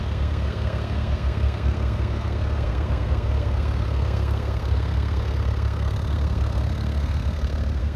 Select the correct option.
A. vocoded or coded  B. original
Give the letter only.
A